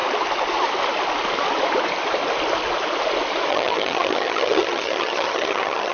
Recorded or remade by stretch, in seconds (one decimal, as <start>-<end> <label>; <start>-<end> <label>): 0.0-3.5 recorded; 3.5-5.9 remade